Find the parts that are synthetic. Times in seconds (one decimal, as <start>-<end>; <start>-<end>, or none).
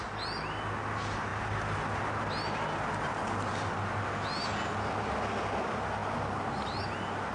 none